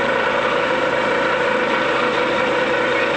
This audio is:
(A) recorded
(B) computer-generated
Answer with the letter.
A